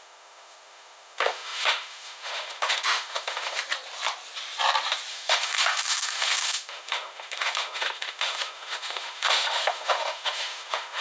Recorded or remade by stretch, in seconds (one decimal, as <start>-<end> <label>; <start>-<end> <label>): 0.0-3.6 remade; 3.6-5.1 recorded; 5.1-11.0 remade

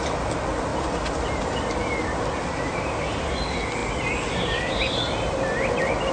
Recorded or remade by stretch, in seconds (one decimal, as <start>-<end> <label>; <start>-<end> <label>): 0.0-6.1 recorded

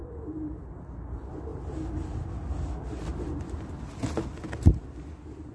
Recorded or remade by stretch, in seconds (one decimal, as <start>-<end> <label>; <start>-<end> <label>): 0.0-5.5 recorded

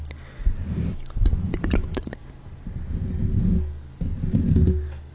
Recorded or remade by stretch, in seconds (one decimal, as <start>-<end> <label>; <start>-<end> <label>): 0.0-5.1 recorded